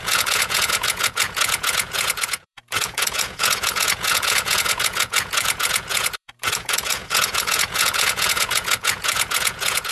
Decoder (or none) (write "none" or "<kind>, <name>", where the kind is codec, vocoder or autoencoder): vocoder, Vocos